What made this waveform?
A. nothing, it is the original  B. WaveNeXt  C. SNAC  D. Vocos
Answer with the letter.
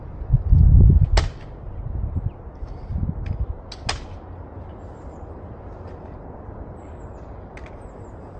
A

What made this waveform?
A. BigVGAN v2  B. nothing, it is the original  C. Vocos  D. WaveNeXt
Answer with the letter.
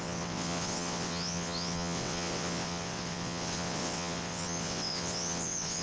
D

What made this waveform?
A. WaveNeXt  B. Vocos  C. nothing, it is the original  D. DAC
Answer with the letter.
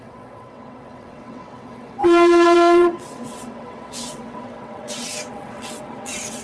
A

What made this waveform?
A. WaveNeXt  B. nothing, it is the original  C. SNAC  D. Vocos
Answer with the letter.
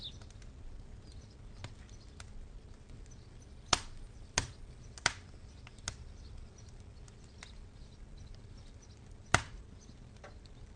B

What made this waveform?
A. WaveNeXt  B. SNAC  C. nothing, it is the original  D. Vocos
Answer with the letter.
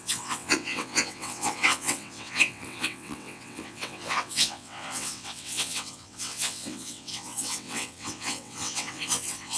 A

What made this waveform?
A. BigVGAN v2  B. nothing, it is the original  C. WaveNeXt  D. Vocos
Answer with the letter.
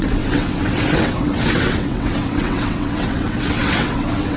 C